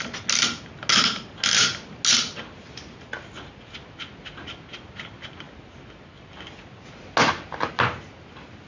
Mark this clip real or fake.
real